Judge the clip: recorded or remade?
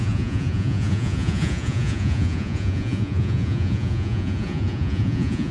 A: remade